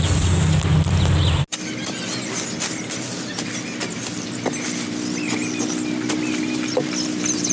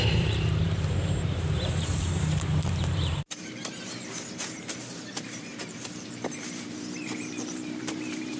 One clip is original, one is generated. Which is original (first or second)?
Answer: first